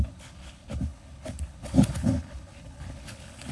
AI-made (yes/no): yes